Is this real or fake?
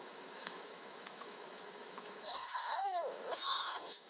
fake